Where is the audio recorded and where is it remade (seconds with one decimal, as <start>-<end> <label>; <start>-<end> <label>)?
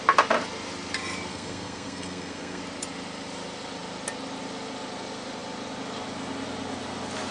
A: 0.0-1.3 recorded; 1.3-2.6 remade; 2.6-7.3 recorded